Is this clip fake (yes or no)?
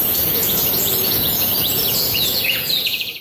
yes